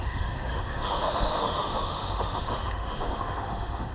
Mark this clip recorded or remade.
remade